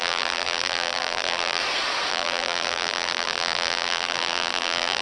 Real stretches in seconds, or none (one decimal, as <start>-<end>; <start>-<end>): 1.6-2.1